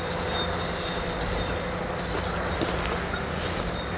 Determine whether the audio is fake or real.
real